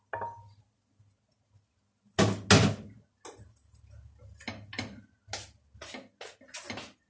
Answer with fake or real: real